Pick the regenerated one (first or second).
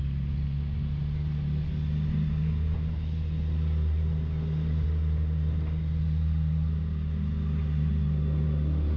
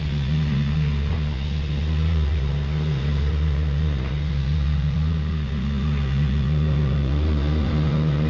second